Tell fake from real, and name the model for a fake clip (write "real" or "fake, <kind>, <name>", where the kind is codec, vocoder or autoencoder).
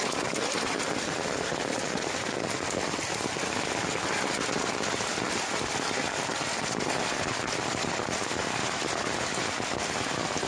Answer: real